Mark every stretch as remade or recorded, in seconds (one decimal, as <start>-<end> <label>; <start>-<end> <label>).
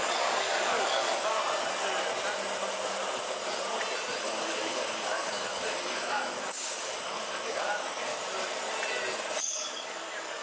0.0-1.4 remade; 1.4-4.2 recorded; 4.2-8.1 remade; 8.1-9.4 recorded; 9.4-10.4 remade